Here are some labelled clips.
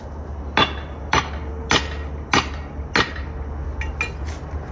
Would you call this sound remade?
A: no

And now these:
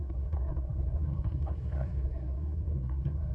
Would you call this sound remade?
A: yes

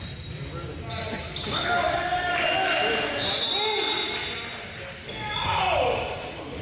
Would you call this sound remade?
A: no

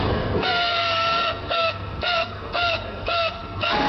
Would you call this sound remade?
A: yes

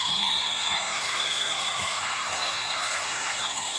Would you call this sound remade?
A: yes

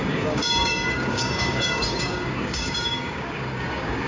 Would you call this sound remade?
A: yes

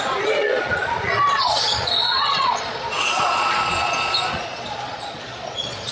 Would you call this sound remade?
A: yes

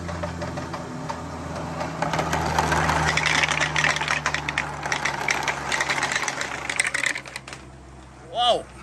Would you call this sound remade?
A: no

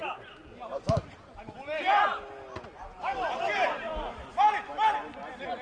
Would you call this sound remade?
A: no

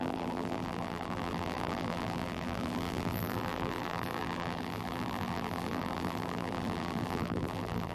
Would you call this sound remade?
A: yes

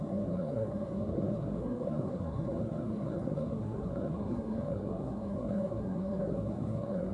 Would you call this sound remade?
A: yes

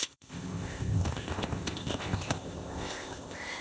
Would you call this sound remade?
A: yes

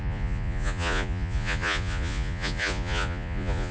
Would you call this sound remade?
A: yes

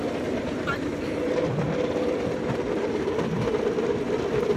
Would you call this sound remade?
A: yes